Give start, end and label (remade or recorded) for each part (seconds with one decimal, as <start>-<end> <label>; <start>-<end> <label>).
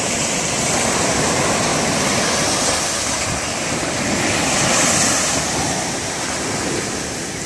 0.0-7.5 recorded